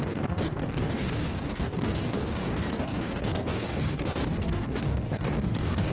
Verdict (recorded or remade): remade